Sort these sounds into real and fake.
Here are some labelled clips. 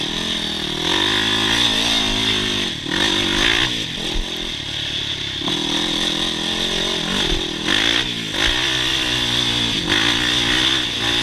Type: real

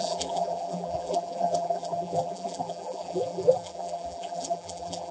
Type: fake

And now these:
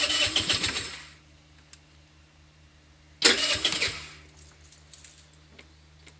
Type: real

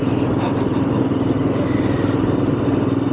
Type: real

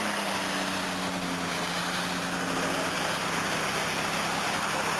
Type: real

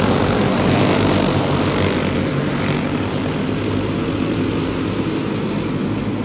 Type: real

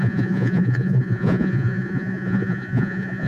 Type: fake